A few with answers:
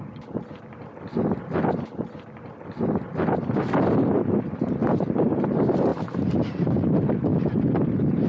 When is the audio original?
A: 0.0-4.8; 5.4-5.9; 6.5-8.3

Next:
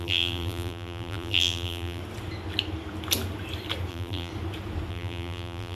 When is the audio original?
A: 2.0-3.9; 4.3-4.9

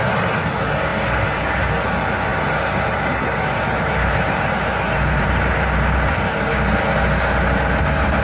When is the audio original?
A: 0.0-2.3; 6.5-8.2